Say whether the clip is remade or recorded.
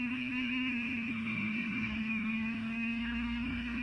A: remade